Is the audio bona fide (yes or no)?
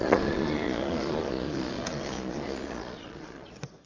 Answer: no